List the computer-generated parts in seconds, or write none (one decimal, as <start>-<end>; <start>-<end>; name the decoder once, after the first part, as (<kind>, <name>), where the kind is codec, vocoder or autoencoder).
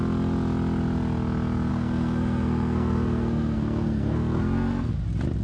1.7-4.9 (codec, SNAC)